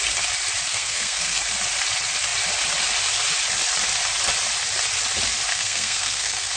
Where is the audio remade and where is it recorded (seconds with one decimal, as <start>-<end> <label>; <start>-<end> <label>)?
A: 0.0-0.7 recorded; 0.7-1.4 remade; 1.4-5.5 recorded; 5.5-6.6 remade